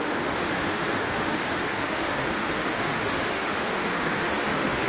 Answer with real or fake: fake